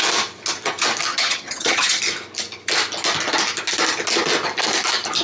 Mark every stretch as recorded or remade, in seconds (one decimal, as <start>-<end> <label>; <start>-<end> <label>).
0.0-1.1 recorded; 1.1-2.0 remade; 2.0-5.2 recorded